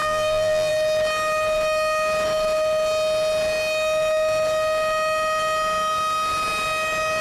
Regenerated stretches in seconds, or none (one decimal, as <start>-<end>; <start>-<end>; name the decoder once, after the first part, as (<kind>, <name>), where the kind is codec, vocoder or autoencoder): 0.0-0.7 (vocoder, BigVGAN v2)